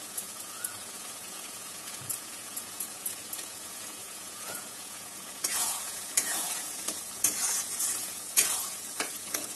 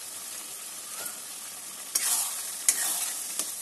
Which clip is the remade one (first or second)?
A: first